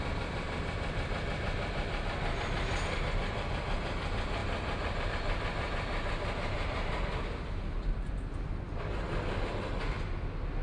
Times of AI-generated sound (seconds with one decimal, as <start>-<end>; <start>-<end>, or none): none